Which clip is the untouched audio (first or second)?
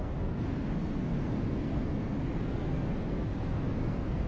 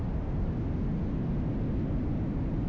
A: second